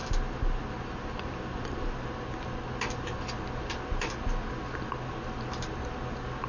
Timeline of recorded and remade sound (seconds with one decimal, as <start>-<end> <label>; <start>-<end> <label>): 0.0-6.5 recorded